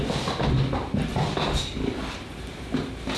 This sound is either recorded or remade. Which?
recorded